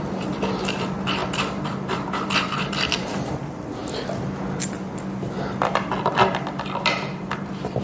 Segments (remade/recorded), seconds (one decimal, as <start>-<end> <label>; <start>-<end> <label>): 0.0-3.8 remade; 3.8-5.7 recorded; 5.7-7.8 remade